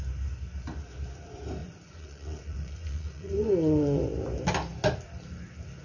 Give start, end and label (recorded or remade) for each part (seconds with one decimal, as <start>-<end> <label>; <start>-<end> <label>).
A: 0.0-1.6 recorded; 1.6-4.0 remade; 4.0-5.8 recorded